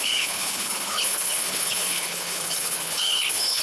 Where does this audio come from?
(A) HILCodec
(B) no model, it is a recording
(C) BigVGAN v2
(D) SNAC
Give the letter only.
A